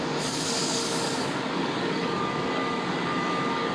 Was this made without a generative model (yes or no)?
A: no